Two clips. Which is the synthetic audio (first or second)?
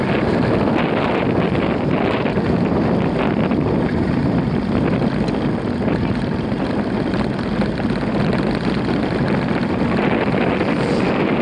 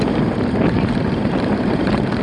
second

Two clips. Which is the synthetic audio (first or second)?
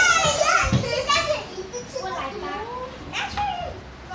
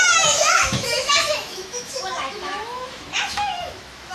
second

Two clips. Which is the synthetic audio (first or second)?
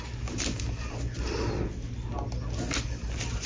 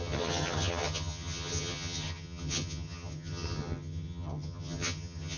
second